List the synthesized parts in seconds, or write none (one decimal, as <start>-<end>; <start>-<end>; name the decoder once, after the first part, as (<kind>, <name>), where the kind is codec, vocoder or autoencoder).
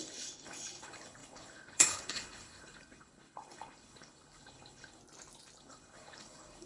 0.0-5.0 (codec, HILCodec); 5.6-6.7